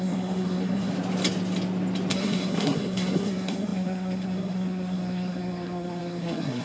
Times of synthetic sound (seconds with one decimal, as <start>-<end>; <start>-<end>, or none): 0.0-0.9; 2.1-6.6